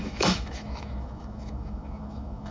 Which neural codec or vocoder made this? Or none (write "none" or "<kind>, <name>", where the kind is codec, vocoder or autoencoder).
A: autoencoder, DAC-VAE